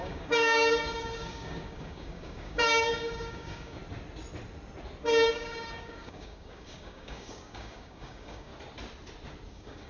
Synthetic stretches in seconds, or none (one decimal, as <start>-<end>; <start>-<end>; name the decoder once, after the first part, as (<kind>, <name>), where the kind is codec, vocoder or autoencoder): 0.0-3.8 (codec, DAC); 5.0-8.5; 9.5-9.9